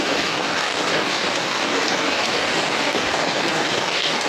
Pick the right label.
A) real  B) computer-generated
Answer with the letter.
B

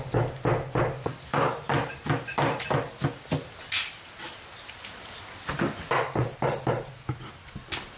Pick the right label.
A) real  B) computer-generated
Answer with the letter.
A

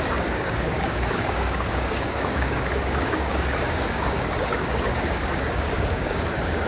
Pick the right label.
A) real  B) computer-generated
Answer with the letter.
B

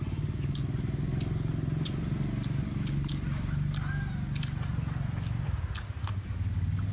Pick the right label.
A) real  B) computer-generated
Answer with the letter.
A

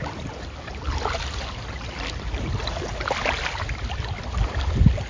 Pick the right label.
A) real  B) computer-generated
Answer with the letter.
A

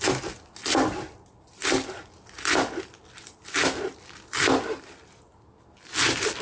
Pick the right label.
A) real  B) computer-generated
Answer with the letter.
A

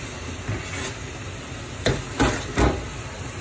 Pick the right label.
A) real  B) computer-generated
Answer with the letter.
A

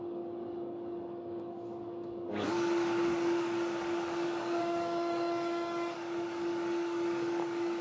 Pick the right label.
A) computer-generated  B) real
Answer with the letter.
A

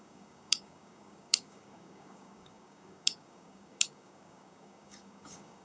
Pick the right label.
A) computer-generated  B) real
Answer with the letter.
A